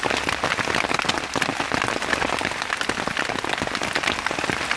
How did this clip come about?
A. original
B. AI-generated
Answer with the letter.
A